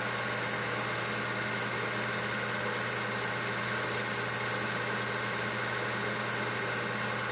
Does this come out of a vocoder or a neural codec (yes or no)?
no